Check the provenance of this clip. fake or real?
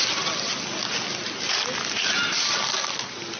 real